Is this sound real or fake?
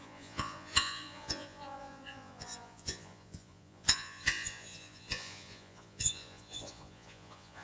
fake